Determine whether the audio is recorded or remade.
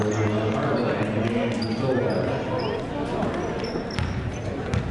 recorded